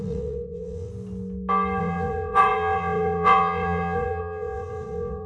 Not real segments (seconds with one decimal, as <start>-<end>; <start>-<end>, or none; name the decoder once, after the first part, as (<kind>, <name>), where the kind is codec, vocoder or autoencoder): 0.0-0.9 (vocoder, WaveNeXt); 1.8-5.3